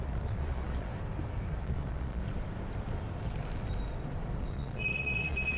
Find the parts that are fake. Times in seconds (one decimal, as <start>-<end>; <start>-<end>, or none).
0.0-0.9; 1.6-2.2; 4.4-5.6